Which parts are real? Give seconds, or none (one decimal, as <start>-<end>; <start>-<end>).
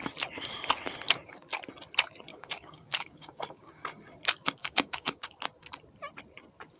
0.0-2.3; 3.8-4.6; 5.4-6.8